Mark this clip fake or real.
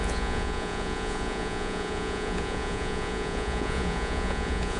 fake